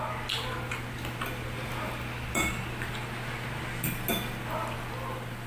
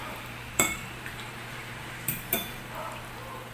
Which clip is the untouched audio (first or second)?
first